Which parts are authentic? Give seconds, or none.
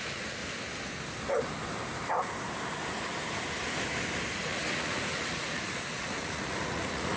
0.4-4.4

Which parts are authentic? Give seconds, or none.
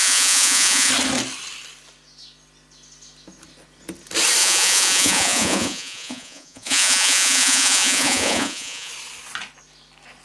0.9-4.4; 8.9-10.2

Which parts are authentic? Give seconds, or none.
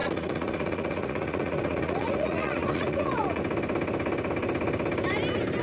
3.4-5.6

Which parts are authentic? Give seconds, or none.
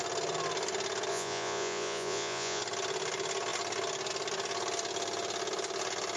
0.0-1.1; 2.6-6.2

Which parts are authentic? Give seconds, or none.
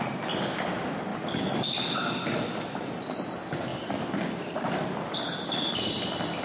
0.0-6.4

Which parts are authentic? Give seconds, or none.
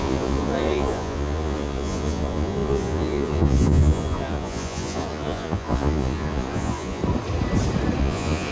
7.0-8.0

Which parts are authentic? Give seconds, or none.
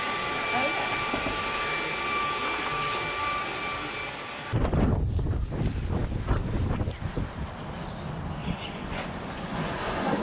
0.0-8.4